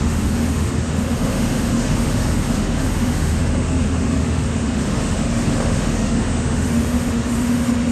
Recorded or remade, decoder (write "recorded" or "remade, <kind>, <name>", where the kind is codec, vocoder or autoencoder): remade, autoencoder, DAC-VAE